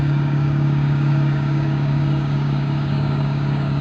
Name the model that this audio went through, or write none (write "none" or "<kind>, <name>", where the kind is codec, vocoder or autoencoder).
codec, DAC